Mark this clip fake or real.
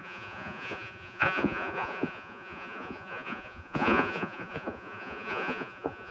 fake